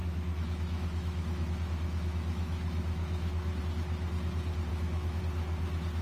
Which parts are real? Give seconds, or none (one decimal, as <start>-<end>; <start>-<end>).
3.6-4.7; 5.2-6.0